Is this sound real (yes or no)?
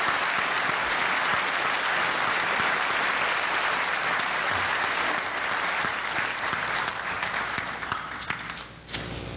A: yes